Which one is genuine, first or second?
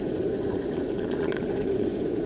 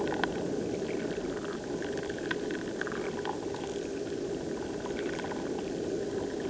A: second